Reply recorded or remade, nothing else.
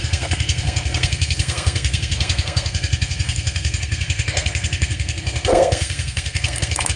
remade